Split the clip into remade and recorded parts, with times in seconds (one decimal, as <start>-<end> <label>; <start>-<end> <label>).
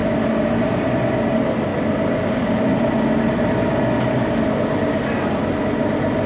0.0-6.3 recorded